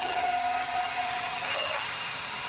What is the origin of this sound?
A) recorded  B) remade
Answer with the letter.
B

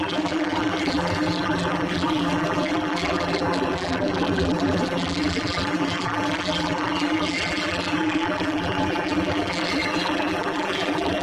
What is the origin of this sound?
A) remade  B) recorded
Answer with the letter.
A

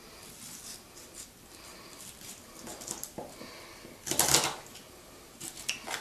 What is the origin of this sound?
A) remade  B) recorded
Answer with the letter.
B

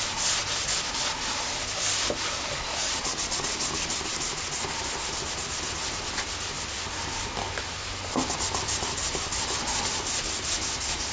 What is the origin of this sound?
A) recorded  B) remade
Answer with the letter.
A